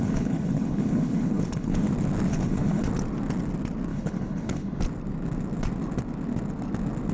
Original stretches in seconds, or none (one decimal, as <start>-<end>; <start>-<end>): 1.9-2.3; 2.9-3.9; 4.8-7.1